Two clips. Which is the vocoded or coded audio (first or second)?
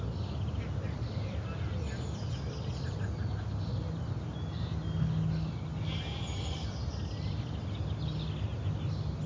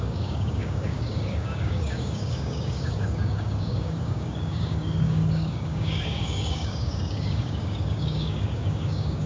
second